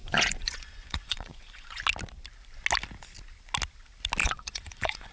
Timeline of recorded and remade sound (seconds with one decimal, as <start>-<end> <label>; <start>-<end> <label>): 0.0-1.8 remade; 1.8-4.2 recorded; 4.2-5.1 remade